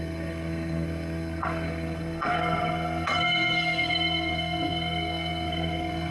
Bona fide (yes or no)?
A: no